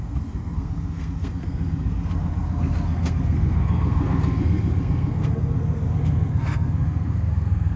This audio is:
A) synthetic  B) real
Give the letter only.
A